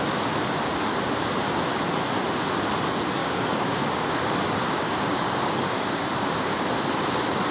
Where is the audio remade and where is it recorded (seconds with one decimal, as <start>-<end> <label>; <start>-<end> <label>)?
0.0-3.2 recorded; 3.2-5.9 remade; 5.9-7.5 recorded